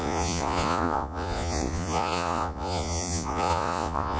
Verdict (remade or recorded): remade